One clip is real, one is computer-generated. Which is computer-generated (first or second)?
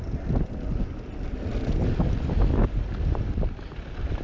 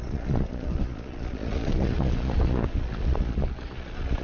second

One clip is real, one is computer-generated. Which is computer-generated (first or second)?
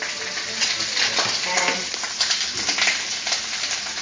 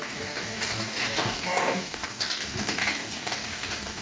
second